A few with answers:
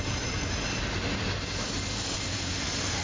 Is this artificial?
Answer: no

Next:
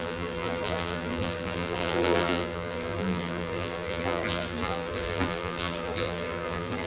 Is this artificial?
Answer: yes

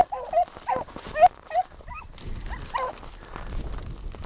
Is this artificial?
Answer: no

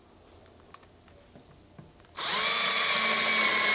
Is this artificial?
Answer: no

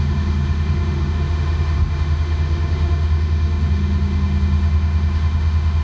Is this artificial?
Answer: yes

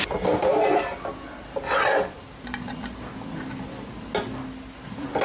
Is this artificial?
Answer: no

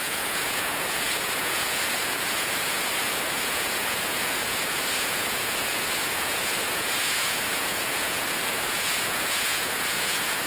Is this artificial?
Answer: yes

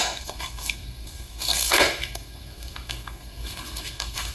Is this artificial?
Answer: yes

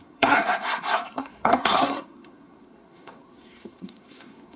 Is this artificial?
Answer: yes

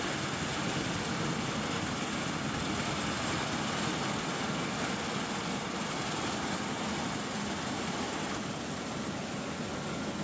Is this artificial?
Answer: no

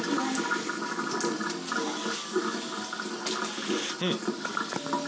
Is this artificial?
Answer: no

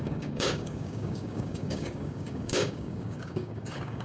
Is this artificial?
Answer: yes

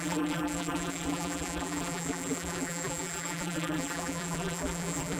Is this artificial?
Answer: yes